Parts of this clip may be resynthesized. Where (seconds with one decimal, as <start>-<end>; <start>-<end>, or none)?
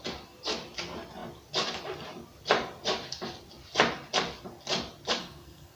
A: 5.2-5.8